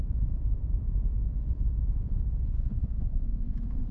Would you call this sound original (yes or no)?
no